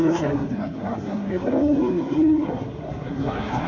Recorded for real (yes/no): no